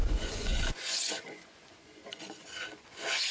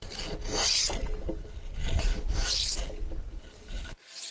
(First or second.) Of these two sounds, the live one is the second